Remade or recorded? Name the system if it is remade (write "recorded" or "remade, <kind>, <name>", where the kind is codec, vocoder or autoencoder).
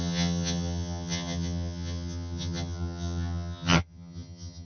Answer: remade, vocoder, HiFi-GAN